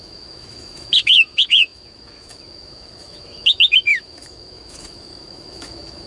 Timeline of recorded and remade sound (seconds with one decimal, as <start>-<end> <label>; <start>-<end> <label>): 0.0-6.1 remade